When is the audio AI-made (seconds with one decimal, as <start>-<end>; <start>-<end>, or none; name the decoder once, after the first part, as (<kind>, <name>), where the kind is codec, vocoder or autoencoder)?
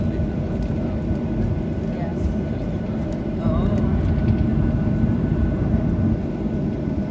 2.1-4.0 (vocoder, BigVGAN v2); 4.5-5.8